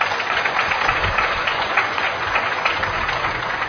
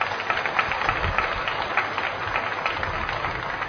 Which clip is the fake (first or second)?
first